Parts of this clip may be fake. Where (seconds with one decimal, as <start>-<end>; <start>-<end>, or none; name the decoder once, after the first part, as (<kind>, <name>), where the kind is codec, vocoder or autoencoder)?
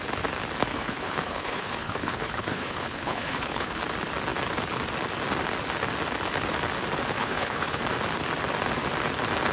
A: 0.7-3.8 (codec, HILCodec); 7.2-7.8